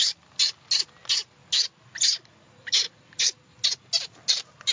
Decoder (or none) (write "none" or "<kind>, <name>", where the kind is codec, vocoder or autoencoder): none